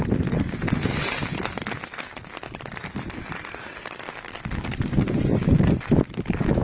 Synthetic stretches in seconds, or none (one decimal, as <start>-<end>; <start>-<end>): none